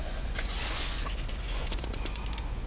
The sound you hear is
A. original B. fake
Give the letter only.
B